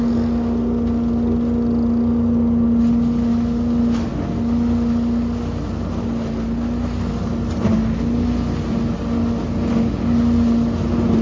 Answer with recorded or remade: recorded